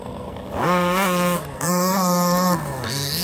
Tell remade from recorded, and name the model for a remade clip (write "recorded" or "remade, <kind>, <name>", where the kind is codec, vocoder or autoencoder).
remade, codec, SNAC